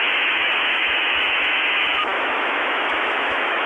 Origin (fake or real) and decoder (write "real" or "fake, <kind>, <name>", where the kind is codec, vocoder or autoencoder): fake, autoencoder, DAC-VAE